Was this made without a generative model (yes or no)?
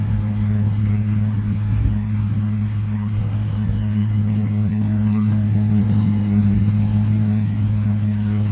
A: no